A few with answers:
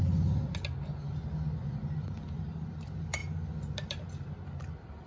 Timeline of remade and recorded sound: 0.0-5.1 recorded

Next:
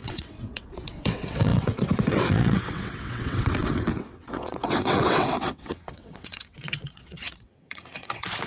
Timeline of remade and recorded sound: 0.0-8.5 remade

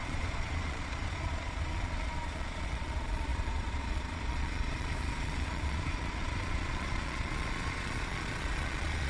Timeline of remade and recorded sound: 0.0-9.1 remade

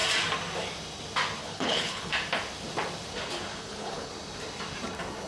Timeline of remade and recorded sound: 0.0-1.4 recorded; 1.4-2.1 remade; 2.1-3.5 recorded; 3.5-4.1 remade; 4.1-5.3 recorded

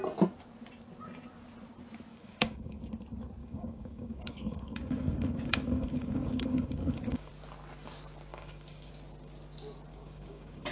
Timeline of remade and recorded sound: 0.0-2.1 recorded; 2.1-2.9 remade; 2.9-3.4 recorded; 3.4-7.3 remade; 7.3-8.3 recorded; 8.3-8.9 remade; 8.9-9.9 recorded; 9.9-10.7 remade

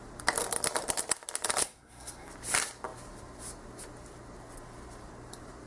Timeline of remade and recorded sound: 0.0-1.6 recorded; 1.6-2.3 remade; 2.3-5.7 recorded

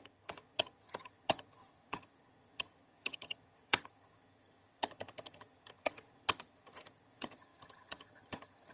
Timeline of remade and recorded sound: 0.0-8.7 remade

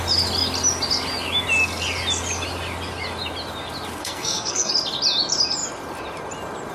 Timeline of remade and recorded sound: 0.0-4.0 recorded; 4.0-4.7 remade; 4.7-6.7 recorded